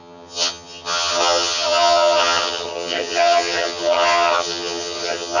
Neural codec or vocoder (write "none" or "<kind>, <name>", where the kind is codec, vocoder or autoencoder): vocoder, HiFi-GAN